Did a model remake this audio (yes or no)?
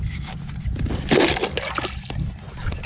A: no